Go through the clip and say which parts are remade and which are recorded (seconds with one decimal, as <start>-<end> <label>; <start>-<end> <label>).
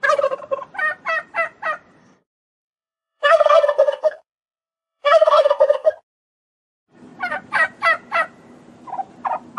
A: 0.0-2.0 recorded; 2.0-5.9 remade; 5.9-9.6 recorded